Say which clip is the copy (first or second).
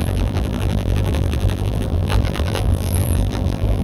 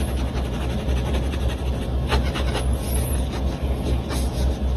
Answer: first